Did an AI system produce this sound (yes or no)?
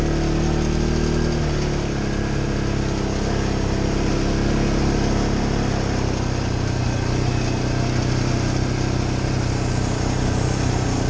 no